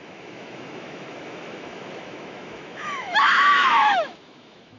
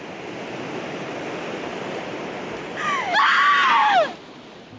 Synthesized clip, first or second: first